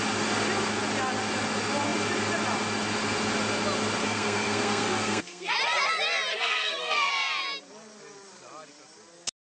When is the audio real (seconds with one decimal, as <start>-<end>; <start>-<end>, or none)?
0.0-4.0; 5.5-6.3; 7.1-9.5